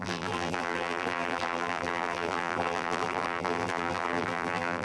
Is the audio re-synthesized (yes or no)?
yes